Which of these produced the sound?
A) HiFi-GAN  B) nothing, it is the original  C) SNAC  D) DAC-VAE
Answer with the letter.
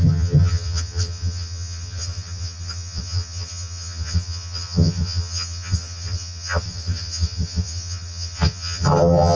A